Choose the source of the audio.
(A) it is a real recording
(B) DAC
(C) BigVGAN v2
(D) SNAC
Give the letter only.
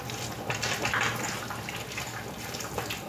A